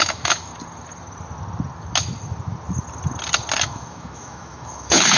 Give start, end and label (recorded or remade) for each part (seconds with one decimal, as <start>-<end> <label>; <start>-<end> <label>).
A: 0.0-0.5 remade; 0.5-3.6 recorded; 3.6-5.2 remade